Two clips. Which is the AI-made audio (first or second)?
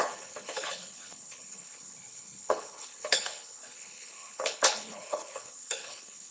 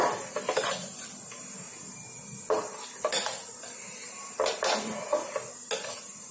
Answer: first